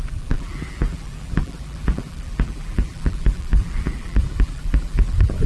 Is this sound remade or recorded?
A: remade